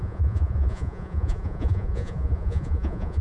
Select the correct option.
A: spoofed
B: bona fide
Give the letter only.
A